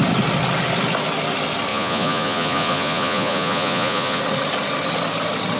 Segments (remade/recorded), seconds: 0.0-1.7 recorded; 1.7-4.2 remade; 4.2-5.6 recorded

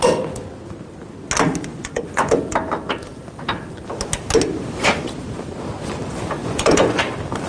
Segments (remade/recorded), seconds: 0.0-1.7 recorded; 1.7-2.3 remade; 2.3-6.4 recorded; 6.4-7.0 remade; 7.0-7.5 recorded

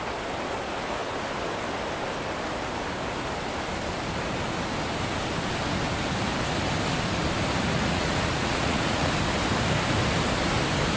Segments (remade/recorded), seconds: 0.0-7.7 recorded; 7.7-9.1 remade; 9.1-11.0 recorded